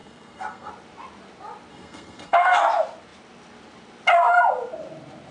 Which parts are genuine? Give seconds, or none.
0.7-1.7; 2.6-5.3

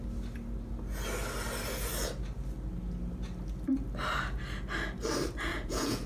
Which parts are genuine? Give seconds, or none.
0.0-5.5

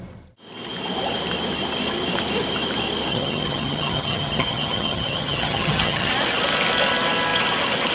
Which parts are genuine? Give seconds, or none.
0.0-3.1; 6.1-7.9